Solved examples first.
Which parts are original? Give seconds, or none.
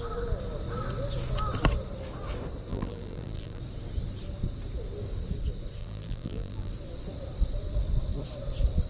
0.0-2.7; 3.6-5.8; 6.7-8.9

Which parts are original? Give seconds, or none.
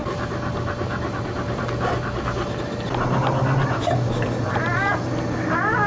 0.0-5.9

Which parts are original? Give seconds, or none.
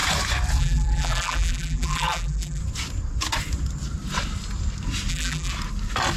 0.0-0.6; 2.6-5.1; 5.5-6.2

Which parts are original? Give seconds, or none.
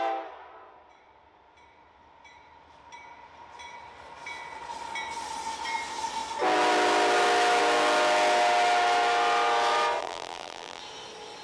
0.0-10.0; 10.8-11.4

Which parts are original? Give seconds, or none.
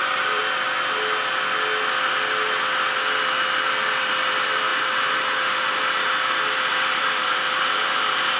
0.4-3.8; 4.7-6.7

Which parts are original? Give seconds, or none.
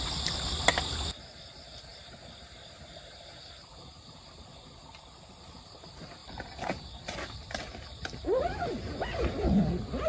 0.0-6.2; 9.0-10.1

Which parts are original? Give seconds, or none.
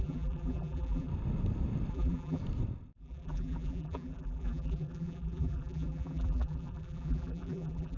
1.1-1.9; 2.4-3.0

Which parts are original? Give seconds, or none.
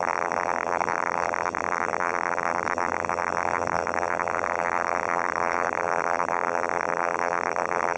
none